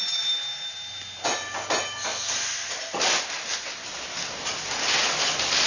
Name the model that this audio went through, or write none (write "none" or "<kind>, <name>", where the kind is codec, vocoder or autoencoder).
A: none